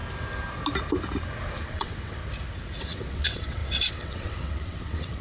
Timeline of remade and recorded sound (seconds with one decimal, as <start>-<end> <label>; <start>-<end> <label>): 0.0-1.6 recorded; 1.6-2.2 remade; 2.2-2.8 recorded; 2.8-5.2 remade